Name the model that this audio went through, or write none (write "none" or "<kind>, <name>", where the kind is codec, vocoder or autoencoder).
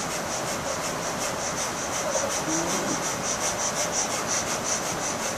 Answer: none